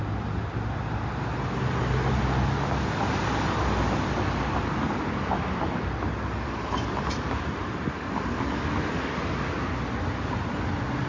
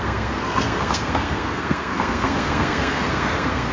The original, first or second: first